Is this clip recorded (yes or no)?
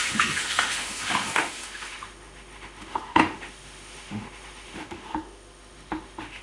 no